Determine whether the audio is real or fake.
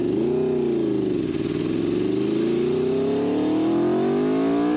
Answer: real